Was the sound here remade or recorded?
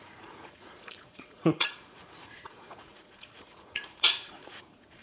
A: remade